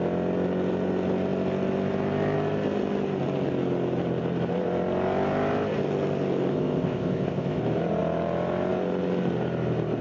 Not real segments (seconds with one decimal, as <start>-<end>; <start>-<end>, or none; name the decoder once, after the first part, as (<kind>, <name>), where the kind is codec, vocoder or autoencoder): 6.5-7.6 (codec, ZipCodec)

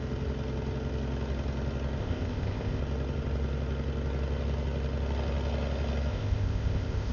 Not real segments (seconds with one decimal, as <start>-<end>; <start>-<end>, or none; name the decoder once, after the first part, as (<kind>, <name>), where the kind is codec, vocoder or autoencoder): 2.0-2.8 (codec, ZipCodec); 6.1-7.1

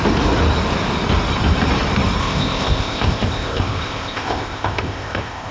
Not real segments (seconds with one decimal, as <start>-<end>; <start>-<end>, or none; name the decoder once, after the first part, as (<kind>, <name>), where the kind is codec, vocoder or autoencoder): 2.2-5.5 (codec, ZipCodec)